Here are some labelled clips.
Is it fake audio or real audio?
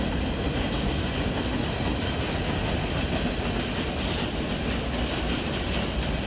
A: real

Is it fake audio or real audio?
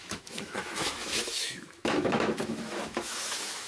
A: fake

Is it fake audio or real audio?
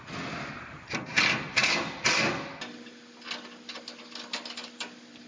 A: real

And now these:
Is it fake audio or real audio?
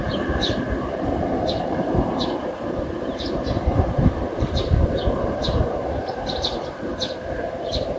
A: fake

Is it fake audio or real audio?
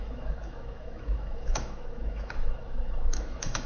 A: fake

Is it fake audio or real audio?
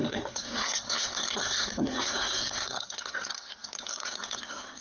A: fake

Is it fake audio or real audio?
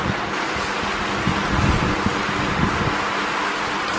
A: real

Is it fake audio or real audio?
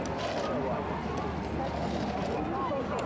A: real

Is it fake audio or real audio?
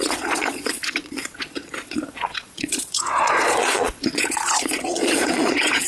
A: fake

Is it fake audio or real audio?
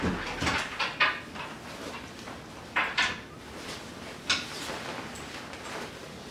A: real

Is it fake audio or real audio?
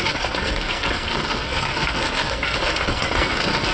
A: fake